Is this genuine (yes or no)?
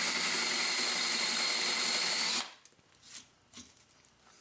yes